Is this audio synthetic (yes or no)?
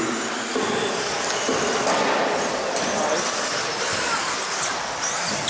no